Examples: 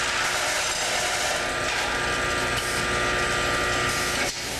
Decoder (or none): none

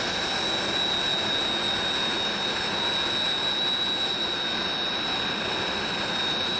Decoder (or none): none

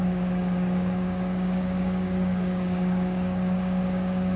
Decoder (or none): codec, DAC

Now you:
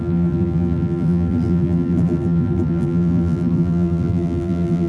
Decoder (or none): vocoder, BigVGAN v2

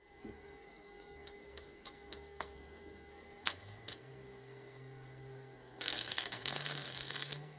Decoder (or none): codec, SNAC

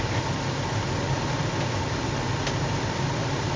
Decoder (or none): none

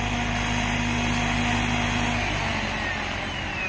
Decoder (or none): none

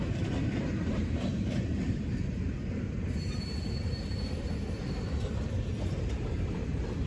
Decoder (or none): vocoder, BigVGAN v2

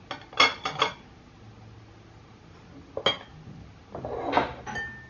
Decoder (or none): none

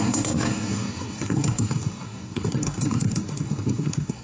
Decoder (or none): codec, SNAC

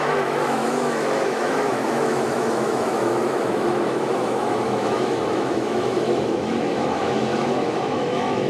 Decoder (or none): autoencoder, DAC-VAE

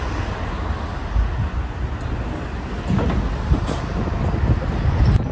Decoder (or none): none